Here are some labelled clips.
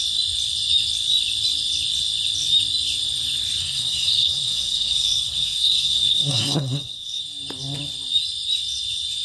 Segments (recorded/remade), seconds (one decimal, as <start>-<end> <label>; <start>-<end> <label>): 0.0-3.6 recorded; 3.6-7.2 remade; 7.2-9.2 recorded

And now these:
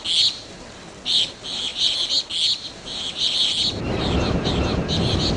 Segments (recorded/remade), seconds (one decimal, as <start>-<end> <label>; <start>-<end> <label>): 0.0-5.4 recorded

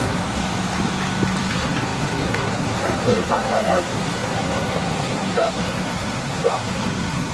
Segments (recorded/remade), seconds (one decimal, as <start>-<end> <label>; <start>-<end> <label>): 0.0-0.4 remade; 0.4-1.5 recorded; 1.5-7.3 remade

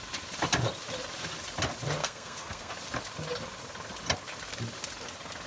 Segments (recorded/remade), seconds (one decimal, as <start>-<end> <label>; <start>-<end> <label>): 0.0-2.0 recorded; 2.0-2.7 remade; 2.7-5.5 recorded

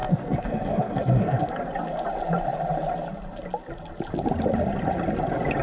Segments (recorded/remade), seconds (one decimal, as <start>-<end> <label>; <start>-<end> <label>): 0.0-1.5 remade; 1.5-5.6 recorded

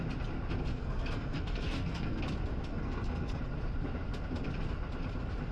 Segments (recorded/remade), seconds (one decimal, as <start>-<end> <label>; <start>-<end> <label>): 0.0-0.7 recorded; 0.7-2.2 remade; 2.2-2.7 recorded; 2.7-3.4 remade; 3.4-5.5 recorded

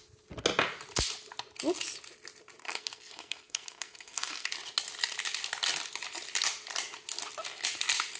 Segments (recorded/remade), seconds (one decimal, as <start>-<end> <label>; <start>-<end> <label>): 0.0-2.6 recorded; 2.6-4.5 remade; 4.5-8.2 recorded

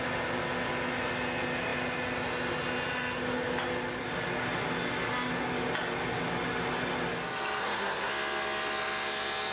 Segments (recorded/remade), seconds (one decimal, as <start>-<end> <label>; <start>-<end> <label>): 0.0-7.6 recorded; 7.6-8.1 remade; 8.1-9.5 recorded